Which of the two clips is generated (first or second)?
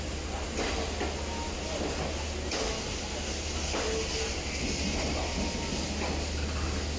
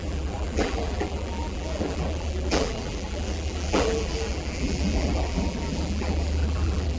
second